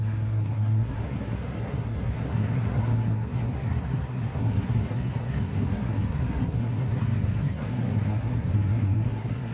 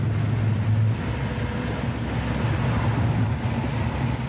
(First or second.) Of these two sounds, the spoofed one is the first